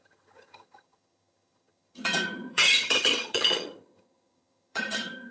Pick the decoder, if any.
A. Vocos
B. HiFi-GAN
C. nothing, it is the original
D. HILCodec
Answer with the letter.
B